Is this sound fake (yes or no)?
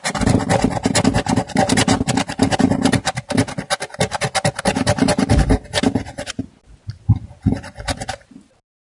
no